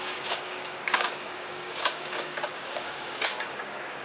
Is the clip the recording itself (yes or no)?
no